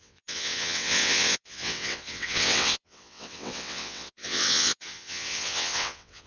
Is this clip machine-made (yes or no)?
yes